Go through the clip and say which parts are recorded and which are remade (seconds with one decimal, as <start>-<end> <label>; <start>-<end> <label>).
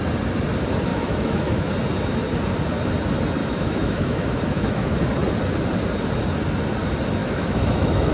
0.0-0.9 recorded; 0.9-1.7 remade; 1.7-3.4 recorded; 3.4-5.0 remade; 5.0-7.2 recorded; 7.2-8.1 remade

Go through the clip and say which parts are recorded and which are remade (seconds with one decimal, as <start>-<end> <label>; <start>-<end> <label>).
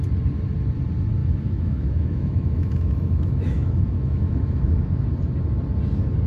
0.0-1.2 recorded; 1.2-5.0 remade; 5.0-6.3 recorded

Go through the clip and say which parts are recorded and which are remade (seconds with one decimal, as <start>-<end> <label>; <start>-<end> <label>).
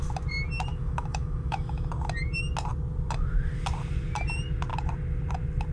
0.0-0.7 recorded; 0.7-1.9 remade; 1.9-5.7 recorded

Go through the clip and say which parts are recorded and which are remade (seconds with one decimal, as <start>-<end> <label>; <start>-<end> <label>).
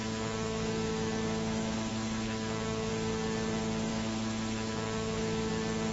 0.0-2.9 remade; 2.9-3.9 recorded; 3.9-5.5 remade; 5.5-5.9 recorded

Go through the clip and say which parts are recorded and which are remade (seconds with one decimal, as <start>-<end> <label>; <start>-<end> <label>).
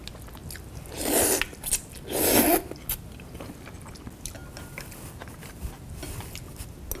0.0-7.0 recorded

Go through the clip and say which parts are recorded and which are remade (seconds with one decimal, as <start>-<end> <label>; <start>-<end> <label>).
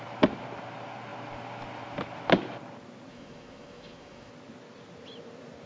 0.0-3.1 recorded; 3.1-4.3 remade; 4.3-5.7 recorded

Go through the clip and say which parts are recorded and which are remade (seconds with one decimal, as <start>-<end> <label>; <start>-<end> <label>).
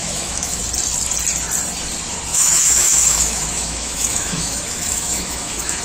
0.0-0.6 remade; 0.6-2.3 recorded; 2.3-5.8 remade